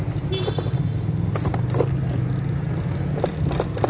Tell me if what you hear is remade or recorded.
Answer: recorded